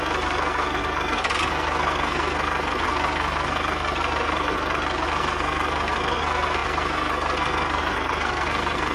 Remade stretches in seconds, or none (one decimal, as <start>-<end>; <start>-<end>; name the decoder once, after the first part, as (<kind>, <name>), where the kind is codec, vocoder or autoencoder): 0.0-8.9 (codec, SNAC)